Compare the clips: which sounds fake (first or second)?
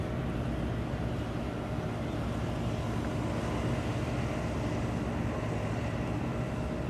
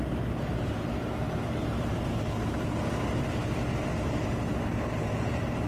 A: second